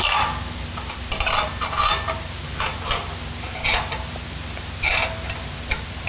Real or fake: real